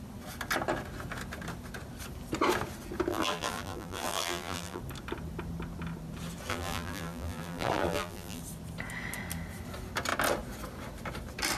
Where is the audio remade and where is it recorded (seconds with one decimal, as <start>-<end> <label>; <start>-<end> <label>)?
0.0-3.1 recorded; 3.1-4.8 remade; 4.8-6.5 recorded; 6.5-8.4 remade; 8.4-11.6 recorded